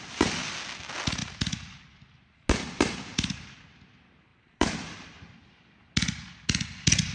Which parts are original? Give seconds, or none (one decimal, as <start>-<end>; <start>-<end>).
0.0-3.1; 3.6-4.3; 5.3-7.1